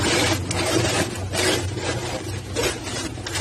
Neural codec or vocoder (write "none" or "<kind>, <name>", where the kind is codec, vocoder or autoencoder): none